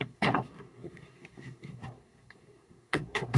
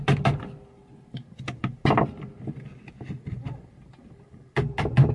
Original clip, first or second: second